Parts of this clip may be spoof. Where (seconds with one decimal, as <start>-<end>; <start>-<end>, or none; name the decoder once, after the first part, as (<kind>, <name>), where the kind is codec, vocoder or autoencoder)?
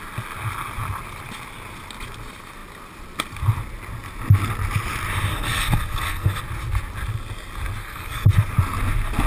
5.3-6.4 (codec, SNAC); 7.8-8.3